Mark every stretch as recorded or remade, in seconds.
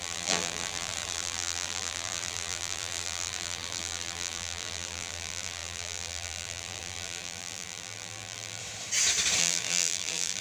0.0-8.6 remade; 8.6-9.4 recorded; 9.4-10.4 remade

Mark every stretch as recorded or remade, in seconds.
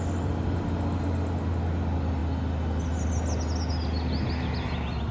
0.0-5.1 recorded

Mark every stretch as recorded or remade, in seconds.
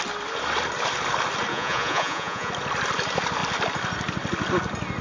0.0-1.5 recorded; 1.5-2.5 remade; 2.5-5.0 recorded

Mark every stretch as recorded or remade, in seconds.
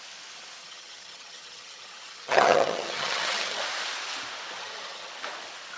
0.0-0.6 recorded; 0.6-3.6 remade; 3.6-4.6 recorded; 4.6-5.1 remade; 5.1-5.8 recorded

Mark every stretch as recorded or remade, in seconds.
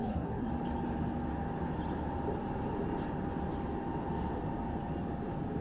0.0-0.5 remade; 0.5-5.6 recorded